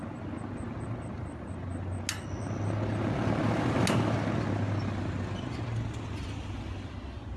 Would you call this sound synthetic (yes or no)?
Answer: no